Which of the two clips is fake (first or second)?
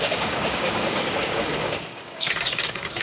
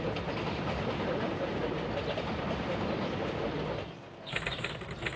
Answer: first